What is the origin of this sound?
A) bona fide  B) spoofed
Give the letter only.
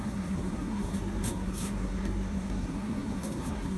B